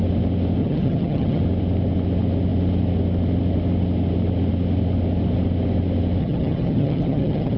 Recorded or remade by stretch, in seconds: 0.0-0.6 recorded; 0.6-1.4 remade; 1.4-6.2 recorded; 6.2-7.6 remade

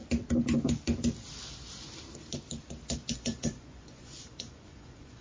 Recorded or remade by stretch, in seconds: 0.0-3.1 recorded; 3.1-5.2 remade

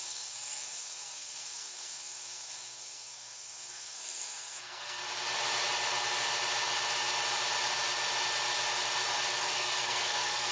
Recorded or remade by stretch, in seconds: 0.0-5.0 remade; 5.0-9.4 recorded; 9.4-10.5 remade

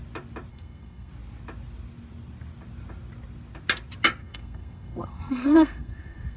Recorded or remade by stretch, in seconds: 0.0-0.5 recorded; 0.5-1.1 remade; 1.1-4.2 recorded; 4.2-6.4 remade

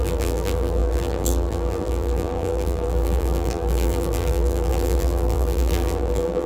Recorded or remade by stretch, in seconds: 0.0-6.5 remade